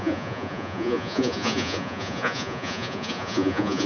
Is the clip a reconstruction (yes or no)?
yes